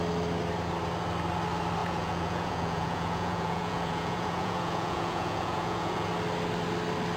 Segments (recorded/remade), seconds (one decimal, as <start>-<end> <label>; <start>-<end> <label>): 0.0-1.8 recorded; 1.8-6.1 remade; 6.1-7.2 recorded

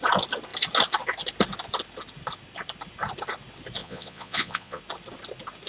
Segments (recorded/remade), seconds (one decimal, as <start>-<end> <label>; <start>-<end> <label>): 0.0-3.8 recorded; 3.8-4.8 remade; 4.8-5.7 recorded

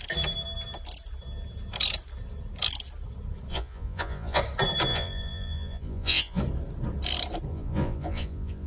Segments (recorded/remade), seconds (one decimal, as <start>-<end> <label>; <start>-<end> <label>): 0.0-3.5 recorded; 3.5-4.4 remade; 4.4-4.9 recorded; 4.9-6.4 remade; 6.4-7.5 recorded; 7.5-8.7 remade